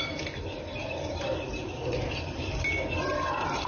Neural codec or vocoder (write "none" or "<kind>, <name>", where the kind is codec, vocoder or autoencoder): none